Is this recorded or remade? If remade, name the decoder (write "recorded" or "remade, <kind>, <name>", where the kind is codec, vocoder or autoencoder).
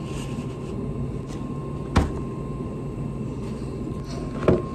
recorded